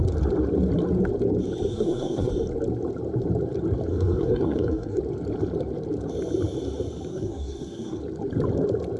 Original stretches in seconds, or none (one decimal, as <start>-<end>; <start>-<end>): 0.0-1.7; 2.3-3.9; 5.0-7.1; 8.0-9.0

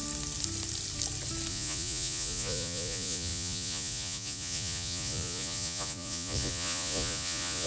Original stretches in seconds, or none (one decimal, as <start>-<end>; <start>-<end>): 0.0-1.5